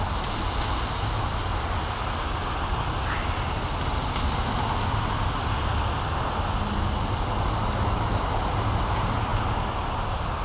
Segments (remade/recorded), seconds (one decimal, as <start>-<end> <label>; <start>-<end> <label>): 0.0-10.4 recorded